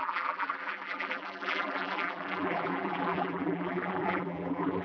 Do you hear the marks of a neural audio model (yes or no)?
yes